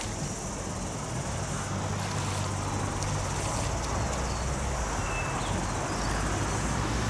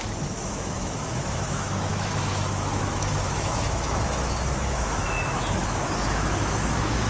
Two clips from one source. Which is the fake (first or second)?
second